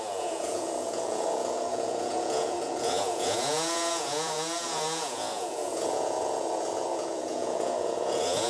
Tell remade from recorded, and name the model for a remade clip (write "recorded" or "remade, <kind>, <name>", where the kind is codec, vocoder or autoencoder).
remade, vocoder, Vocos